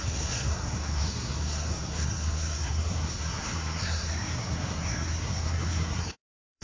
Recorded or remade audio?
remade